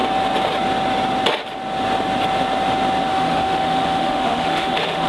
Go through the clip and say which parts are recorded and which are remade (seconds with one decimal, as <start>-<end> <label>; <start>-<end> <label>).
0.0-3.1 recorded; 3.1-5.1 remade